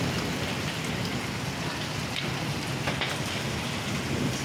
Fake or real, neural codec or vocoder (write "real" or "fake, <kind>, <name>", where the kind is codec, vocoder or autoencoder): real